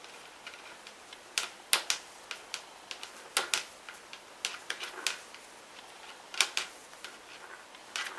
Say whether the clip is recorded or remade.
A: recorded